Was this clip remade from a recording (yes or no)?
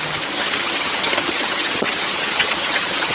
yes